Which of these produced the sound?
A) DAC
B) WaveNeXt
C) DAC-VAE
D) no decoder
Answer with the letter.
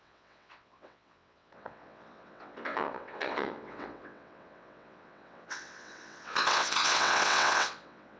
B